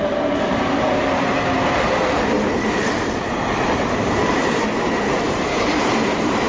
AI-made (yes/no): yes